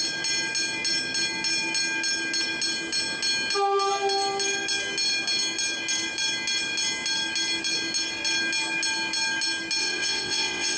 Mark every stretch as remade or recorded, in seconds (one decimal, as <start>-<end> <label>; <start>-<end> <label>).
0.0-9.8 recorded; 9.8-10.8 remade

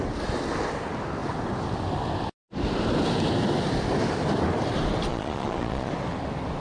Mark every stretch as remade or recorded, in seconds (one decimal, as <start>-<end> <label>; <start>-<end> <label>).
0.0-5.1 recorded; 5.1-5.9 remade; 5.9-6.6 recorded